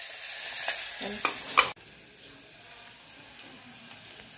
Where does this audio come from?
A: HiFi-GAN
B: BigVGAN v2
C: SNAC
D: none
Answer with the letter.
D